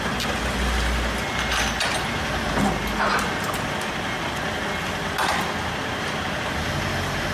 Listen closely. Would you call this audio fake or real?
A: real